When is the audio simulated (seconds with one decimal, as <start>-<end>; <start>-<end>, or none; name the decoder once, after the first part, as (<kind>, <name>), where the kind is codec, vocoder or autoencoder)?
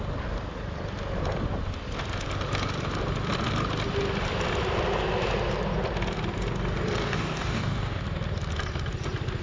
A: 7.0-8.0 (codec, DAC)